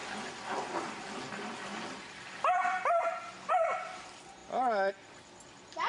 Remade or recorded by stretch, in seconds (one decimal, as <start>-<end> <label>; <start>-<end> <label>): 0.0-5.9 recorded